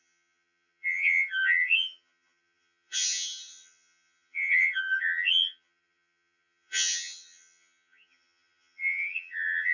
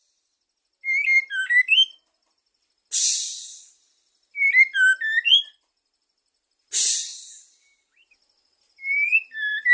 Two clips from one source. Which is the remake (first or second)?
first